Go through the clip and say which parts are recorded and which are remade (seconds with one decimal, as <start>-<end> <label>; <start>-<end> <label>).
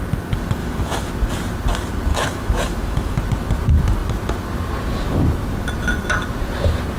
0.0-0.6 recorded; 0.6-1.1 remade; 1.1-2.1 recorded; 2.1-3.2 remade; 3.2-7.0 recorded